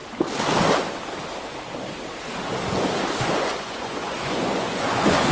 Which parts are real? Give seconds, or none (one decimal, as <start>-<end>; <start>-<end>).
0.0-3.2